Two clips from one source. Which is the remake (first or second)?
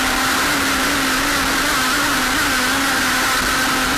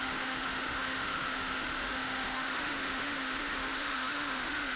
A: second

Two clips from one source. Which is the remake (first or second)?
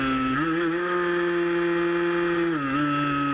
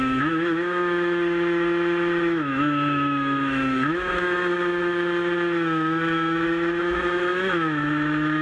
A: second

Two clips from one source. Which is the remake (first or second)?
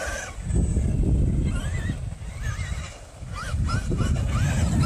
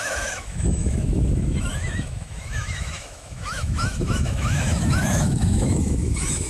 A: second